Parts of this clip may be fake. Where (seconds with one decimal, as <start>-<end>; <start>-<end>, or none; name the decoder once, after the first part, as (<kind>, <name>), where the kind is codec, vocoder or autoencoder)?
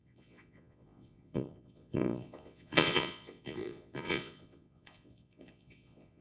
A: 0.0-6.2 (vocoder, Vocos)